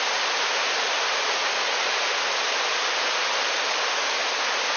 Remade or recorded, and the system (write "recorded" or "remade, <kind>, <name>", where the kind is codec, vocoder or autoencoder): recorded